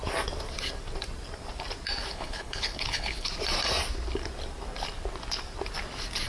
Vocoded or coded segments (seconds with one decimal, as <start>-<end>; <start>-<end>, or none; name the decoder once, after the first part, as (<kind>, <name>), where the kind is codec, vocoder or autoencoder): 2.1-3.3 (codec, HILCodec)